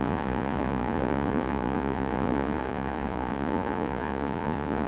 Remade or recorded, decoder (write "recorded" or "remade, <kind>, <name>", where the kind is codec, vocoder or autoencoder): remade, vocoder, Vocos